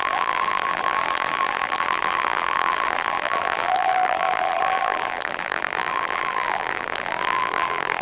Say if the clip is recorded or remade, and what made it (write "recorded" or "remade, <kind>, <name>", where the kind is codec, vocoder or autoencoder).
remade, vocoder, BigVGAN v2